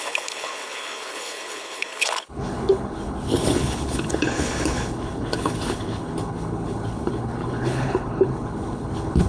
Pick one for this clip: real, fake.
fake